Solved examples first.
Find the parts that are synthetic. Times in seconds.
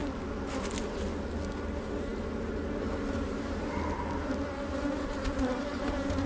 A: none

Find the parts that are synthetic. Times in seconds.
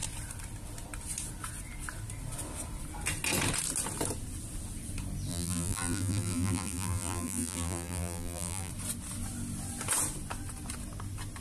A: 5.3-8.7 (vocoder, BigVGAN v2)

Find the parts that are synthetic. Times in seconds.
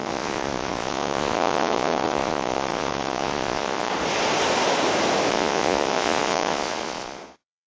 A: 0.0-3.9 (vocoder, Vocos); 5.3-7.7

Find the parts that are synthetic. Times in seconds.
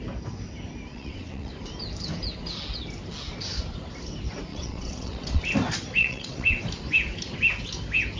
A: 0.9-1.5 (vocoder, WaveNeXt); 4.5-5.4; 6.0-6.6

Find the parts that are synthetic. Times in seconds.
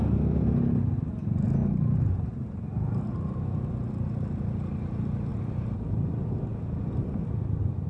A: none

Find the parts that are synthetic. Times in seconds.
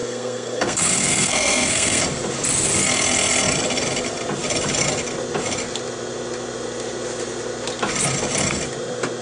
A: 0.0-2.0 (codec, SNAC)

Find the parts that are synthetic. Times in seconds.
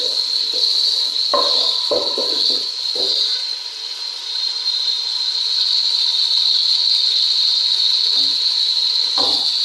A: none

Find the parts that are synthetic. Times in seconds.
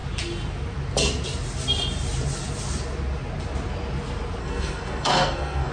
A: 4.4-5.7 (codec, SNAC)